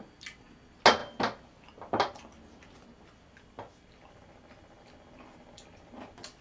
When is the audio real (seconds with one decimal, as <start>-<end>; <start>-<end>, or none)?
0.0-6.4